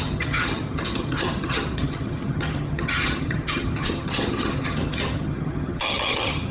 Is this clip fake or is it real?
fake